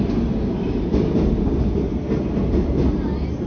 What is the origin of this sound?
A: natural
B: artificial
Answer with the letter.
A